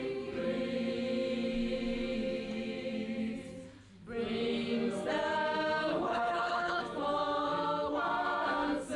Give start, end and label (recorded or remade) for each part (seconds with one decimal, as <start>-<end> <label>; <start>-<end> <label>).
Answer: 0.0-5.9 recorded; 5.9-6.8 remade; 6.8-9.0 recorded